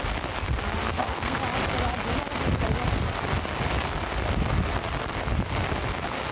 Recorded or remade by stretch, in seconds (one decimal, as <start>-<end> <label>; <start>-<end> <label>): 0.0-0.8 recorded; 0.8-1.4 remade; 1.4-6.3 recorded